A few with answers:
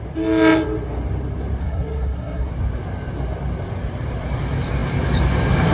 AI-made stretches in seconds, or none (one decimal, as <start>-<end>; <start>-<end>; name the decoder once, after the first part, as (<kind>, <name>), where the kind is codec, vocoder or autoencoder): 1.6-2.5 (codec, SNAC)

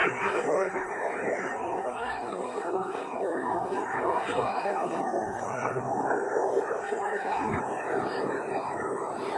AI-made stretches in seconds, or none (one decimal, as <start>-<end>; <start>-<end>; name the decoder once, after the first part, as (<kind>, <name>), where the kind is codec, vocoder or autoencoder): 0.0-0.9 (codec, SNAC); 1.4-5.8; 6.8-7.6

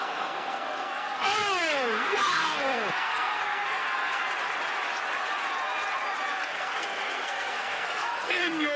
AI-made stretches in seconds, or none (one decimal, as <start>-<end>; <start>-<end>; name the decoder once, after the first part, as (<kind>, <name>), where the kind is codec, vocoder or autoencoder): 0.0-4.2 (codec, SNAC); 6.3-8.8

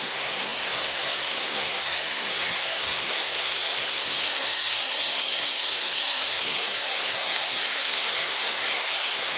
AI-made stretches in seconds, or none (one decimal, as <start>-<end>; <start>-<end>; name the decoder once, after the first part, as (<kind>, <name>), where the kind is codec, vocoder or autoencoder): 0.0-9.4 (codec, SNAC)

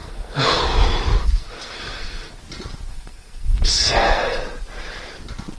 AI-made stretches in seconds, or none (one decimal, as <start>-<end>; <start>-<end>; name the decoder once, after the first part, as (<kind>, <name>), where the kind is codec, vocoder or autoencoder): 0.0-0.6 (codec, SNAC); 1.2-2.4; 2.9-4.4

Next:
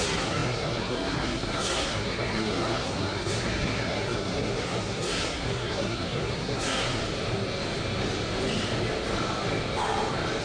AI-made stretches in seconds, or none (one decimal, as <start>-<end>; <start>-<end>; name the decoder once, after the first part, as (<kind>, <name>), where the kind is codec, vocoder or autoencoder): 0.0-7.0 (codec, SNAC)